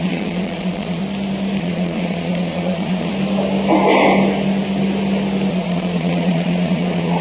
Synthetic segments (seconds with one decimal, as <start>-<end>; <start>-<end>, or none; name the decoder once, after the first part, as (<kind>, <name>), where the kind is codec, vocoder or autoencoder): 0.0-1.0 (vocoder, Vocos); 1.6-3.1; 5.5-7.2

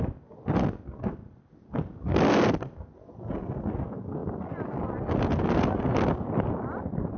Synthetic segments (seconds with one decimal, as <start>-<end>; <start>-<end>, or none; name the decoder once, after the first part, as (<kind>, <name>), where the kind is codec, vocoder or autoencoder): none

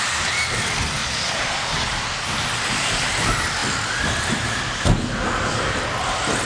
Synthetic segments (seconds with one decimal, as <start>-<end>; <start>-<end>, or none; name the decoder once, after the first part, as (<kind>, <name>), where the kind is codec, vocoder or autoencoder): 1.0-1.7 (vocoder, Vocos)

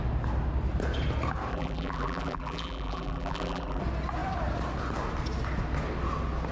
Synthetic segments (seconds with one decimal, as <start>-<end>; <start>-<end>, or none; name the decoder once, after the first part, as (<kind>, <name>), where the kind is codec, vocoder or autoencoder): 1.5-3.8 (vocoder, BigVGAN v2)